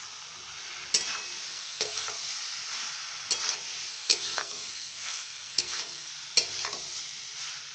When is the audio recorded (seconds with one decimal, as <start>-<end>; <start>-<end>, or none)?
0.0-1.5; 2.1-3.9; 6.1-7.7